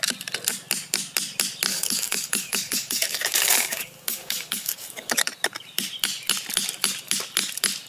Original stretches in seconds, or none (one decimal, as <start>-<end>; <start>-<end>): 0.0-1.7; 5.2-7.9